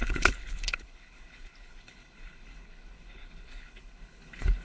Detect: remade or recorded remade